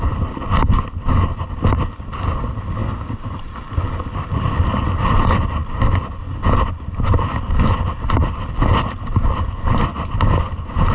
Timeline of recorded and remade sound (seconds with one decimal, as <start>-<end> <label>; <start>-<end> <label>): 0.0-10.9 recorded